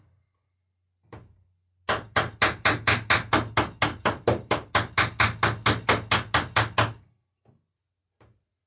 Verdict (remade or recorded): recorded